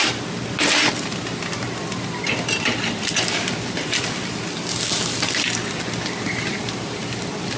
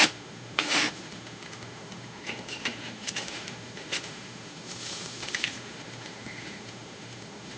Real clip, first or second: first